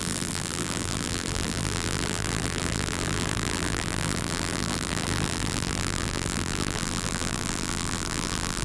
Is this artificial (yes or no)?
yes